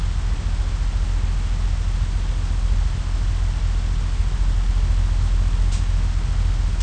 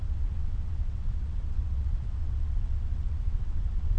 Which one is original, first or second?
first